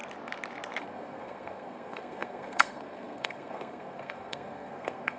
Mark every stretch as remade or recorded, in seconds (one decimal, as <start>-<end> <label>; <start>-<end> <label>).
0.0-0.8 recorded; 0.8-5.2 remade